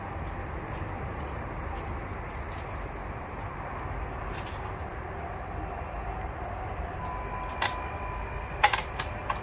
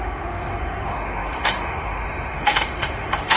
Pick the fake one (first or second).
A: second